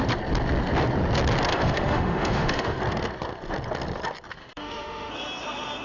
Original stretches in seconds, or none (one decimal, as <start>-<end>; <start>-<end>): 0.0-1.5; 2.8-4.4; 5.1-5.8